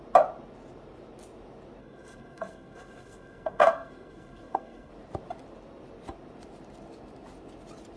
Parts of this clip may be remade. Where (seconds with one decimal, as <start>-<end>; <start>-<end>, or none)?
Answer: 1.8-4.9